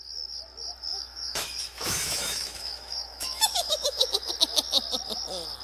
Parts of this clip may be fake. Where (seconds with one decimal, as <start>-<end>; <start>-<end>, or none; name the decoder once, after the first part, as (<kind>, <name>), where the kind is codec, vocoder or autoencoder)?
0.9-4.3 (autoencoder, DAC-VAE)